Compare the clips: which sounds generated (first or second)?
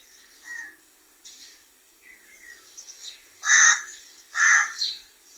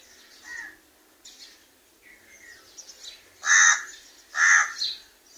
first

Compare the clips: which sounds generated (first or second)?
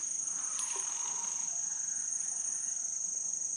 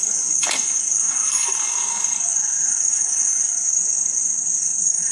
second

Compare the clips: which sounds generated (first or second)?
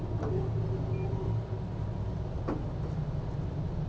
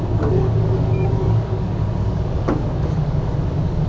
second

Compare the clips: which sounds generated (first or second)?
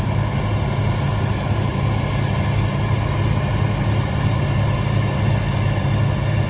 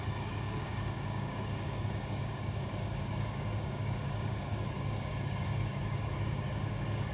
second